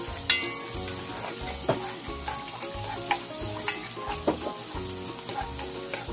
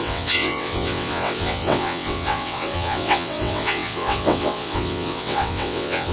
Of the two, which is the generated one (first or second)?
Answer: second